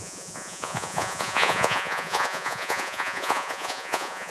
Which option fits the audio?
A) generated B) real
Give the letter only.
A